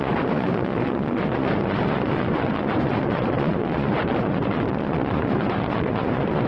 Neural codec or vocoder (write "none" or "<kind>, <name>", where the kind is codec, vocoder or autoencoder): vocoder, Vocos